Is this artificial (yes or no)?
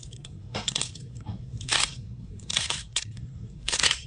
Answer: yes